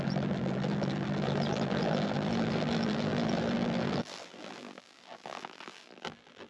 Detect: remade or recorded remade